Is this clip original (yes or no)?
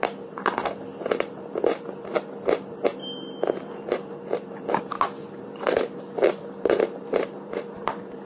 no